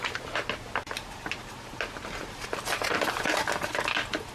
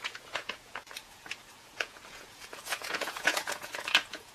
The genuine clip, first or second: first